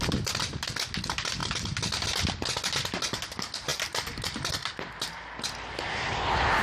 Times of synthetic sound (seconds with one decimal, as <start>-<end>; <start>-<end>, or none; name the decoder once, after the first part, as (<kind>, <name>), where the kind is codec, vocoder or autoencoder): none